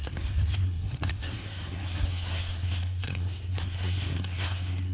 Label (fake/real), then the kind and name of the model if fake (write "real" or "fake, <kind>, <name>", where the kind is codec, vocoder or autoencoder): fake, codec, SNAC